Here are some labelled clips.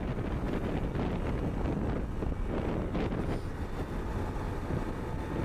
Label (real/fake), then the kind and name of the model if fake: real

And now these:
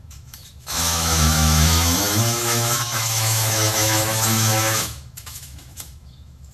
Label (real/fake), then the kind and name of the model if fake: fake, autoencoder, DAC-VAE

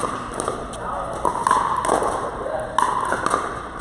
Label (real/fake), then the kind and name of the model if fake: real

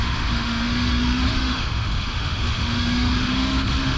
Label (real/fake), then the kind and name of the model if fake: fake, autoencoder, DAC-VAE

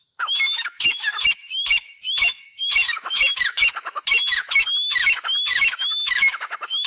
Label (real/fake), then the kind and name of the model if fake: fake, autoencoder, DAC-VAE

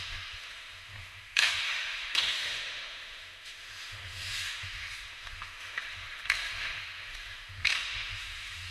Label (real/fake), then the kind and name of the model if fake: fake, autoencoder, DAC-VAE